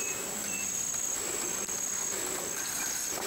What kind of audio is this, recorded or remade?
recorded